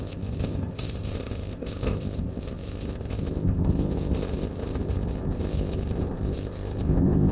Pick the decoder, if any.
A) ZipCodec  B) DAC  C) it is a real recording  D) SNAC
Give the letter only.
A